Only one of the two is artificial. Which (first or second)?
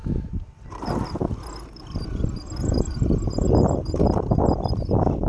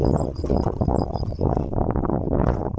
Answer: second